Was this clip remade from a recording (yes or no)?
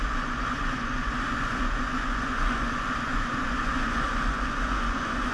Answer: yes